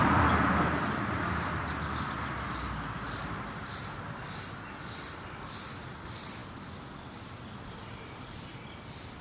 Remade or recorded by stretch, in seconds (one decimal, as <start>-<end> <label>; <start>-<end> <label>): 0.0-9.2 recorded